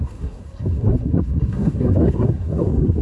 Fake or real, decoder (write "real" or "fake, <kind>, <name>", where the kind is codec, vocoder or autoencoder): fake, codec, SNAC